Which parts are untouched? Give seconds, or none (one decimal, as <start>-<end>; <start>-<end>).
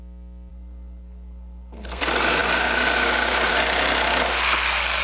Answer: 0.0-0.5; 2.0-5.0